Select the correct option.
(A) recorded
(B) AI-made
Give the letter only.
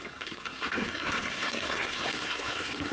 B